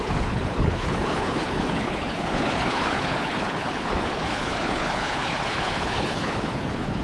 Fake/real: fake